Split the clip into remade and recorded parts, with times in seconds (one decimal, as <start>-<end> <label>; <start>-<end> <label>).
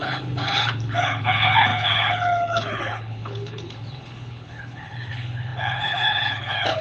0.0-6.8 remade